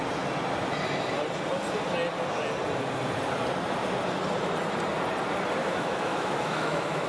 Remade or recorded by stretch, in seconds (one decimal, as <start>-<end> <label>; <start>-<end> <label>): 0.0-5.6 recorded; 5.6-7.1 remade